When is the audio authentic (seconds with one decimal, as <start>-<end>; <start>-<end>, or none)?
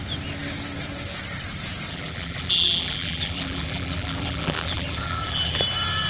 0.0-1.9; 5.6-6.1